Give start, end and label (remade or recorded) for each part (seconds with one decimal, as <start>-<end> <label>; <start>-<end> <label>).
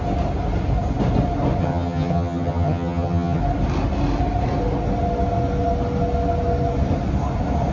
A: 0.0-1.6 recorded; 1.6-3.4 remade; 3.4-7.7 recorded